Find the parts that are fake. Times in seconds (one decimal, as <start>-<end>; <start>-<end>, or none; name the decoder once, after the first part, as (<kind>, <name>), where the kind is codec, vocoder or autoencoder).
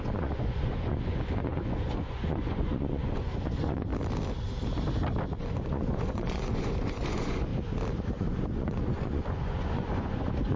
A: 0.0-3.9 (vocoder, Vocos); 5.4-7.5; 8.2-10.6